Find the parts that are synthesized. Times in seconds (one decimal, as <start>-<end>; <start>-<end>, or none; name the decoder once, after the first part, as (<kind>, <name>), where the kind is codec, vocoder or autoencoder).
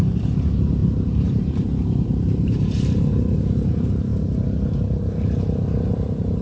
0.0-4.1 (vocoder, BigVGAN v2); 5.9-6.4